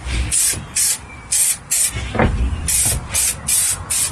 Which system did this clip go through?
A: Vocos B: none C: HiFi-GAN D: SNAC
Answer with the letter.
B